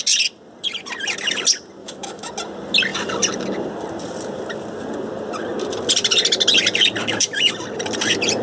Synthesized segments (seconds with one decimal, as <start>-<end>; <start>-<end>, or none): 1.8-2.3; 7.0-7.5